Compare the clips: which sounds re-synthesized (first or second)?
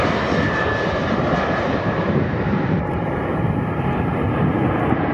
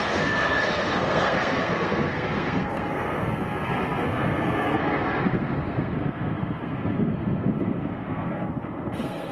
second